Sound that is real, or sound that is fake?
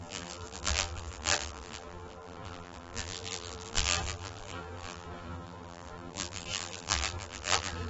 fake